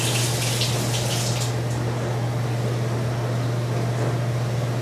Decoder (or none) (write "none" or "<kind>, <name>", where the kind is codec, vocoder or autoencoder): none